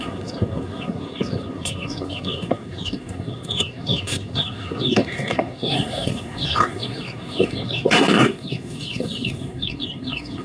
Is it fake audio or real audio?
fake